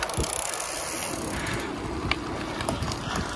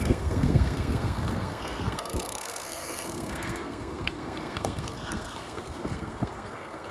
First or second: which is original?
first